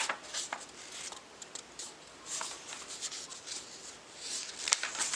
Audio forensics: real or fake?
real